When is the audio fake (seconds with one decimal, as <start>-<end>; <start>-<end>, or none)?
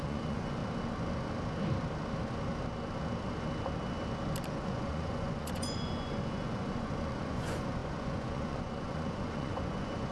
0.0-0.6; 4.5-10.1